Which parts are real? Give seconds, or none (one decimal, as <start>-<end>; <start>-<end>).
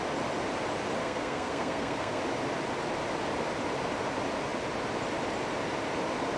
0.0-1.0; 2.2-6.4